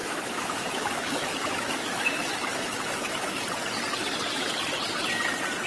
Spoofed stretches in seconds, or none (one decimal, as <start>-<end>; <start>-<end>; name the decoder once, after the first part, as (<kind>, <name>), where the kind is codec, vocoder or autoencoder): 0.0-3.4 (autoencoder, DAC-VAE)